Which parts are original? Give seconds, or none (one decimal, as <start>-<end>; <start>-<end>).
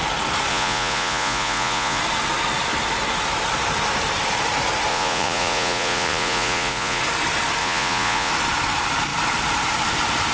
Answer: 0.0-0.5; 2.0-4.9; 7.0-7.6; 8.3-10.3